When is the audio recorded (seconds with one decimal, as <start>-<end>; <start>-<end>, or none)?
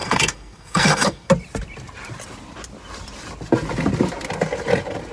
1.3-5.1